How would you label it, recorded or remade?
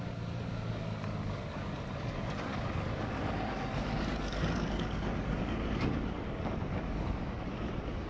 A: remade